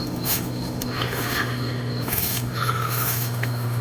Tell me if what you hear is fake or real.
fake